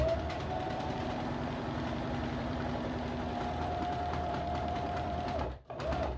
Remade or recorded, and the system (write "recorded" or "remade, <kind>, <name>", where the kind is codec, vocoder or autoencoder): remade, vocoder, BigVGAN v2